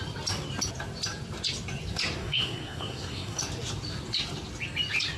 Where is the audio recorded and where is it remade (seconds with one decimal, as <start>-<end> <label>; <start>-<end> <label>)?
0.0-2.2 recorded; 2.2-3.4 remade; 3.4-5.2 recorded